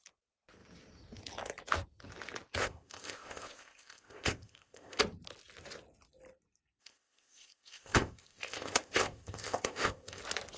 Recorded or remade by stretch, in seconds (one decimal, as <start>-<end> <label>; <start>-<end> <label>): 0.0-2.6 recorded; 2.6-5.0 remade; 5.0-6.8 recorded; 6.8-10.2 remade; 10.2-10.6 recorded